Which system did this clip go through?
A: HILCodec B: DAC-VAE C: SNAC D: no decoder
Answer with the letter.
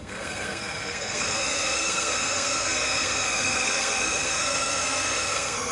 C